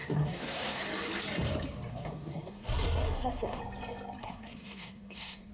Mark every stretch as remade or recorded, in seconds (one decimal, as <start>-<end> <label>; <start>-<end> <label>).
0.0-0.8 remade; 0.8-1.9 recorded; 1.9-3.6 remade; 3.6-4.2 recorded; 4.2-5.5 remade

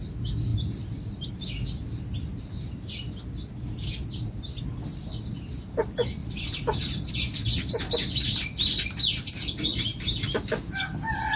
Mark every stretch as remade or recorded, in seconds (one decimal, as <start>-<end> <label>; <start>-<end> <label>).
0.0-6.2 recorded; 6.2-7.1 remade; 7.1-9.7 recorded; 9.7-10.7 remade; 10.7-11.4 recorded

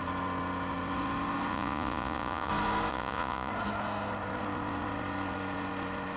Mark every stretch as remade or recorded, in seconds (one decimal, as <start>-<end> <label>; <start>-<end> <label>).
0.0-1.5 recorded; 1.5-2.5 remade; 2.5-2.9 recorded; 2.9-3.5 remade; 3.5-6.2 recorded

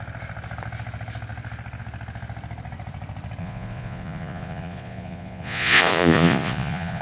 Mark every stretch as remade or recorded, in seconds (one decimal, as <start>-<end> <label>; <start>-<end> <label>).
0.0-3.4 recorded; 3.4-7.0 remade

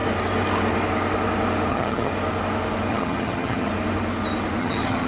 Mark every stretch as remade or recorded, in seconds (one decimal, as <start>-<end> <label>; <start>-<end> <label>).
0.0-1.7 recorded; 1.7-2.1 remade; 2.1-2.9 recorded; 2.9-3.7 remade; 3.7-4.6 recorded; 4.6-5.1 remade

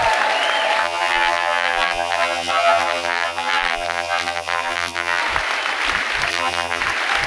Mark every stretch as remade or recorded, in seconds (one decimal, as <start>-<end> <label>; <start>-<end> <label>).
0.0-0.8 recorded; 0.8-5.2 remade; 5.2-6.3 recorded; 6.3-6.8 remade; 6.8-7.3 recorded

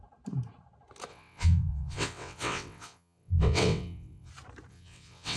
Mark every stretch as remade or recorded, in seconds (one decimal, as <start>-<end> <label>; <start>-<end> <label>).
0.0-1.1 recorded; 1.1-4.3 remade; 4.3-4.7 recorded; 4.7-5.4 remade

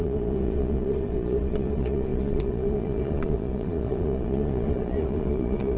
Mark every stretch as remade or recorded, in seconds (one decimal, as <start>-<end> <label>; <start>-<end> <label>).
0.0-5.8 remade